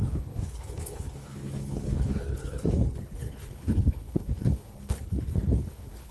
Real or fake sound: fake